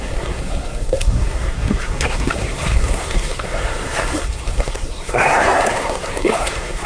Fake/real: fake